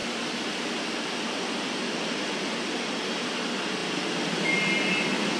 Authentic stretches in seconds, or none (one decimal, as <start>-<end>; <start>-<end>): 0.0-5.4